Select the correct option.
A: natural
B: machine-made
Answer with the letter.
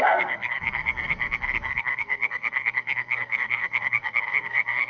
B